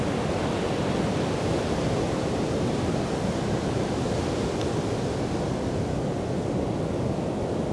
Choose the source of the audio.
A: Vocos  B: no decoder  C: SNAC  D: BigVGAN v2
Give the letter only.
B